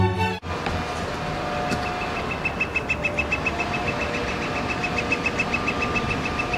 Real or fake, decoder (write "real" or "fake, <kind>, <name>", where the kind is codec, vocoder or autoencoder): real